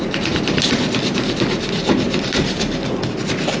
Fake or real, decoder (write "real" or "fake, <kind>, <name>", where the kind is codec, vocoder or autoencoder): real